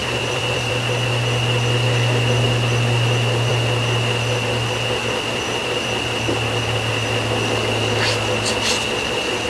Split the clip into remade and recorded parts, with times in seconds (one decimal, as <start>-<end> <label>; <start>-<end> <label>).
0.0-0.7 remade; 0.7-9.5 recorded